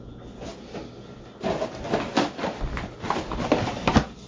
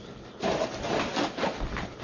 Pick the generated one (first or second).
second